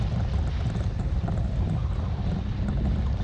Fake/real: real